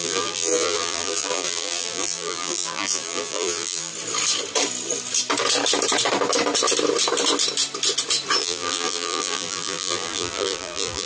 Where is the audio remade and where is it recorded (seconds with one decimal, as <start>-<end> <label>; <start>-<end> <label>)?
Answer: 0.0-3.9 remade; 3.9-8.4 recorded; 8.4-11.1 remade